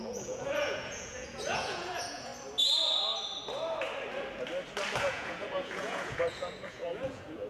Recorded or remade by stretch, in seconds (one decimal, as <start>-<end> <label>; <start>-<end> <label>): 0.0-2.3 remade; 2.3-5.0 recorded; 5.0-7.5 remade